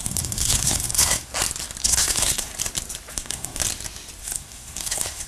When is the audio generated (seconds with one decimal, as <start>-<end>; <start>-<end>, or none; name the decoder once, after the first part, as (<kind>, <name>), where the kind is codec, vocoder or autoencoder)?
0.0-1.3 (codec, SNAC); 1.8-2.5; 3.1-3.6; 4.2-5.3